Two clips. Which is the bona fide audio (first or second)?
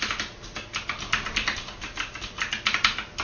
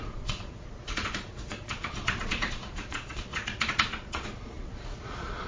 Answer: first